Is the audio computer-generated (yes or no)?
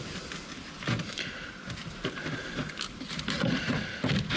no